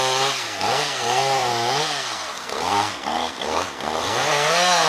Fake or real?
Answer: fake